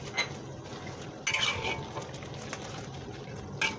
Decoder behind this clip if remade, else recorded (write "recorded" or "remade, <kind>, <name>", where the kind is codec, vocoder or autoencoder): recorded